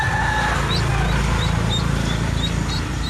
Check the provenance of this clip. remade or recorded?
recorded